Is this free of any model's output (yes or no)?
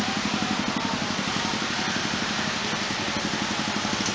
yes